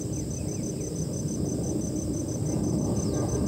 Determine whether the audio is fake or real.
real